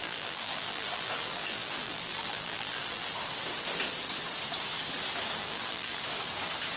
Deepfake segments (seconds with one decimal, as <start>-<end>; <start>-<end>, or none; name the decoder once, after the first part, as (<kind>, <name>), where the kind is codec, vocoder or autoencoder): 0.0-3.1 (vocoder, BigVGAN v2); 5.4-6.0